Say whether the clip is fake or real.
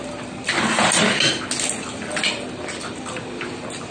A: real